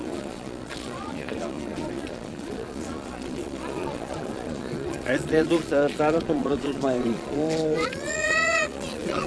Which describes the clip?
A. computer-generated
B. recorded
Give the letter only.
A